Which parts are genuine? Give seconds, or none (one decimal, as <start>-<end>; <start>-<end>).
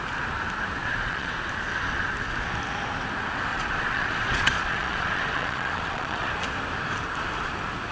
0.0-0.8; 1.3-3.5; 6.3-7.9